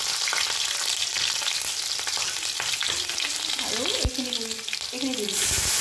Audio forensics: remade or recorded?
recorded